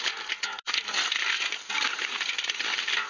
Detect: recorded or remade recorded